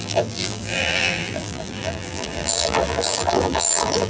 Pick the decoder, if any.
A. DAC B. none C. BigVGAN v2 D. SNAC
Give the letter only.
C